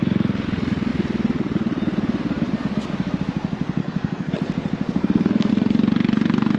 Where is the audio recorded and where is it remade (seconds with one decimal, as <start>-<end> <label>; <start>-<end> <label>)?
0.0-3.8 recorded; 3.8-4.3 remade; 4.3-5.0 recorded; 5.0-5.5 remade; 5.5-6.6 recorded

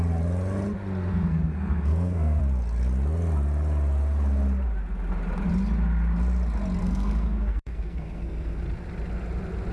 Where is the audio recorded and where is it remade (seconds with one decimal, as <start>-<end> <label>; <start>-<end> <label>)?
0.0-1.1 recorded; 1.1-2.4 remade; 2.4-6.8 recorded; 6.8-8.6 remade; 8.6-9.7 recorded

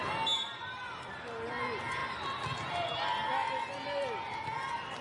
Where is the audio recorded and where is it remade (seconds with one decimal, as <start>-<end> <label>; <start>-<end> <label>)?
0.0-5.0 recorded

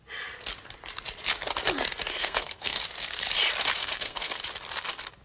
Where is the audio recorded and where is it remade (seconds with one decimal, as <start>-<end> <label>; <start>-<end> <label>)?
0.0-2.1 recorded; 2.1-2.8 remade; 2.8-3.8 recorded; 3.8-4.4 remade; 4.4-5.2 recorded

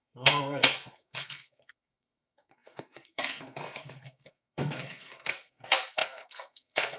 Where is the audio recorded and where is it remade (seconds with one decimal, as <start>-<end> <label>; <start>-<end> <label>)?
0.0-7.0 remade

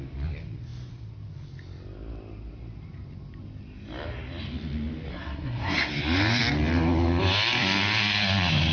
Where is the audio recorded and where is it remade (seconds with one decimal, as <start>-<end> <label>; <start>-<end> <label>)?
0.0-5.1 recorded; 5.1-5.9 remade; 5.9-8.7 recorded

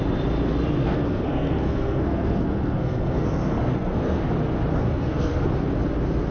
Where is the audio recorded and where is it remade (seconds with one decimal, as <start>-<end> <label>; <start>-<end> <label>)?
0.0-0.8 recorded; 0.8-4.2 remade; 4.2-4.8 recorded; 4.8-5.4 remade; 5.4-6.3 recorded